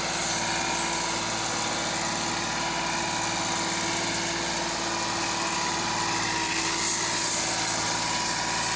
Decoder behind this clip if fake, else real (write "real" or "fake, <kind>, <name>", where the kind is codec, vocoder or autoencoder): real